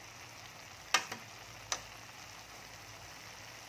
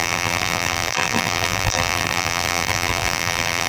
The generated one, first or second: second